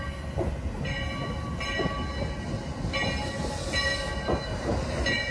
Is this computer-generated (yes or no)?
no